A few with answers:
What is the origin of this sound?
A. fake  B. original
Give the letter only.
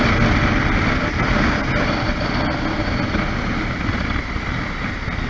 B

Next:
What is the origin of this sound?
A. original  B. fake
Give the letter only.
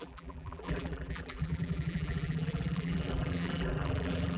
B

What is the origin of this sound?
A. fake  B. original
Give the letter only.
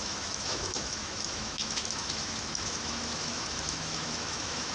A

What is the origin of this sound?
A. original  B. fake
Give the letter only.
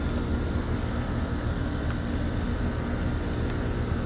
A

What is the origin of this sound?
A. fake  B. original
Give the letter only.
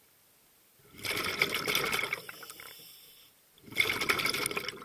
B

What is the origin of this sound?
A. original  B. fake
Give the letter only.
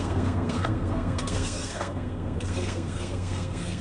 B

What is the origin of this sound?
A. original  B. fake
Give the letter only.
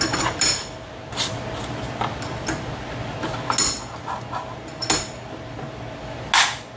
A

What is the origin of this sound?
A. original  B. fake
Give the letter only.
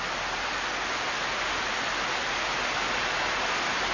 A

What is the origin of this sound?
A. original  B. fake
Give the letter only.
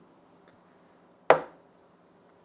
A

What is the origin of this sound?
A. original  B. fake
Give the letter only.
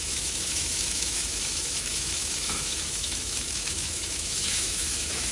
B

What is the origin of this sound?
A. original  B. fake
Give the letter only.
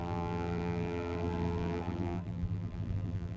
B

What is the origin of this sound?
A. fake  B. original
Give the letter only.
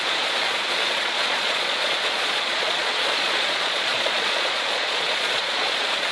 A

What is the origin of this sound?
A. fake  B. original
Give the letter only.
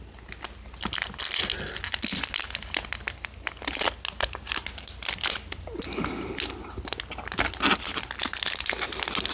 B